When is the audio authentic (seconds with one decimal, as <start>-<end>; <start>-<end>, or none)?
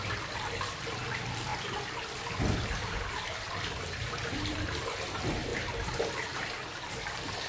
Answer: 5.5-6.2